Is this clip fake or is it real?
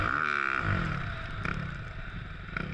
real